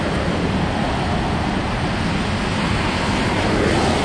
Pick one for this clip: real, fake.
real